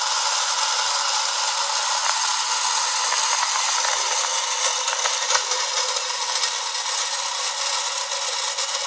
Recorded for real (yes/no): yes